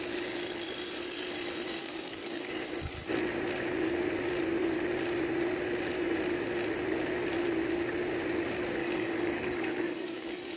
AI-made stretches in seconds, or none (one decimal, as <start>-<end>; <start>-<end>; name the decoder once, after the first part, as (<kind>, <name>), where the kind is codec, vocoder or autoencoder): 1.8-2.5 (codec, DAC); 8.8-10.6